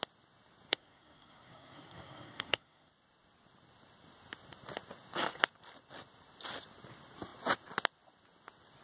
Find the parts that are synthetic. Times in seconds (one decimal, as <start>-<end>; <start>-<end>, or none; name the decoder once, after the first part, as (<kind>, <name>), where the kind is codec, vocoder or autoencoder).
0.7-2.9 (codec, SNAC)